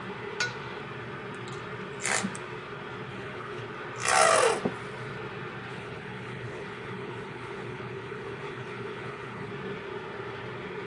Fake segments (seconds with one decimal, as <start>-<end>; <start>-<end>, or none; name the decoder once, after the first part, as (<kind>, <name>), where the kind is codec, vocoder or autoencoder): 3.1-3.6 (codec, HILCodec); 5.7-9.5